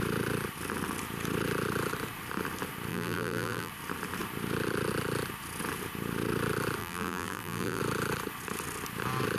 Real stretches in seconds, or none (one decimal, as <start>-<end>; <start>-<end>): 0.0-2.9; 3.7-6.8; 7.8-9.4